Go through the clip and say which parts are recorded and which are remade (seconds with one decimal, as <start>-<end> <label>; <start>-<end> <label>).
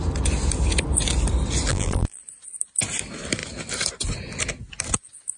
0.0-1.7 recorded; 1.7-2.2 remade; 2.2-5.4 recorded